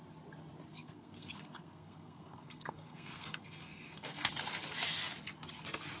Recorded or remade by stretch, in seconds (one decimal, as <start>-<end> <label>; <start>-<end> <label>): 0.0-0.7 recorded; 0.7-4.3 remade; 4.3-6.0 recorded